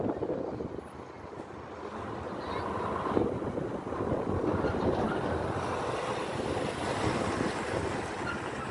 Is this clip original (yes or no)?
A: yes